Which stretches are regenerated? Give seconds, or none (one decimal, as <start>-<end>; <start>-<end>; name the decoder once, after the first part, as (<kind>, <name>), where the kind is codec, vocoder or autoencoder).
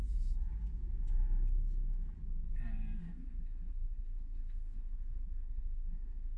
3.0-6.4 (codec, SNAC)